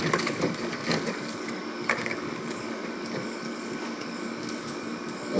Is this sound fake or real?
fake